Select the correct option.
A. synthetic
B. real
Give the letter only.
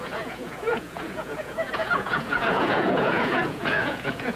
A